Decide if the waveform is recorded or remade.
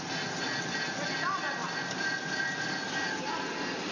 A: recorded